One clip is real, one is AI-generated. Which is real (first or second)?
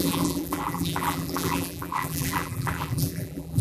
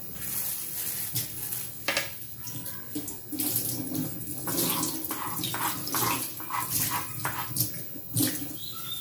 second